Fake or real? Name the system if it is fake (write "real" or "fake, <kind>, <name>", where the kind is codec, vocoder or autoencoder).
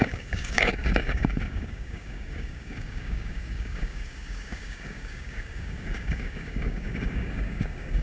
fake, codec, DAC